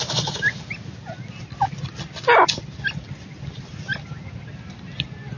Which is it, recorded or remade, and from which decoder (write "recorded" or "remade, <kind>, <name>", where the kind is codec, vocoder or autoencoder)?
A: recorded